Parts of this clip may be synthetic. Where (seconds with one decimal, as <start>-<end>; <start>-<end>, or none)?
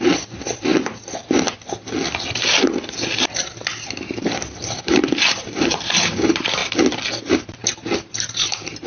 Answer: 0.0-0.7; 5.4-6.6; 7.3-8.9